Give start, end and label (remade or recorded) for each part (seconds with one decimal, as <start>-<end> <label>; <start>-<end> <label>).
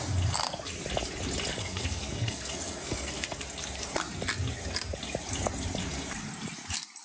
0.0-1.6 recorded; 1.6-3.4 remade; 3.4-7.0 recorded